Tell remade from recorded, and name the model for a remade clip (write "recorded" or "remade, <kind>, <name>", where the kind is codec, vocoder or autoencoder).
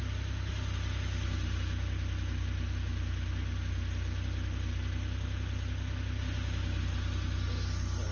recorded